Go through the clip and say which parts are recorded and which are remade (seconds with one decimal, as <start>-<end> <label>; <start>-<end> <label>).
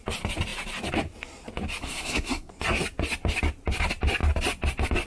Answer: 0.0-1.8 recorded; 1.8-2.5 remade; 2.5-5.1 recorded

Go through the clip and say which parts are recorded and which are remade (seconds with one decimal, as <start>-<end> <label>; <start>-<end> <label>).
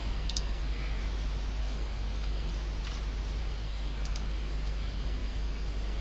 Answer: 0.0-1.0 remade; 1.0-1.6 recorded; 1.6-2.5 remade; 2.5-3.4 recorded; 3.4-6.0 remade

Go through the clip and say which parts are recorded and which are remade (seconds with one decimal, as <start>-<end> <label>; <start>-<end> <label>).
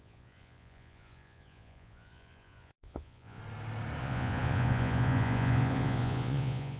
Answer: 0.0-3.4 remade; 3.4-4.0 recorded; 4.0-6.8 remade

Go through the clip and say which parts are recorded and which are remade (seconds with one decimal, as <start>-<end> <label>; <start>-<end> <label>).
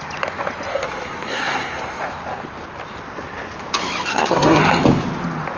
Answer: 0.0-0.7 recorded; 0.7-2.0 remade; 2.0-4.1 recorded; 4.1-4.6 remade; 4.6-5.6 recorded